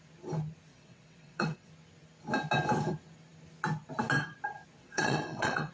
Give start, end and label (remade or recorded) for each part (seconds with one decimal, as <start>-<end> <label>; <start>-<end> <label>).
0.0-0.7 recorded; 0.7-1.7 remade; 1.7-4.8 recorded; 4.8-5.7 remade